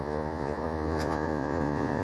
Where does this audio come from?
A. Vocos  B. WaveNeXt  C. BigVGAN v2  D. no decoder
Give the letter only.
A